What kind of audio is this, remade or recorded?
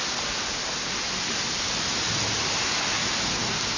recorded